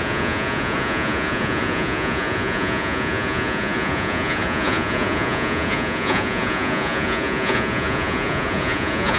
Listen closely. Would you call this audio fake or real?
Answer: fake